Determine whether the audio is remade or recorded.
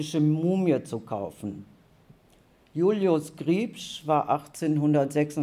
recorded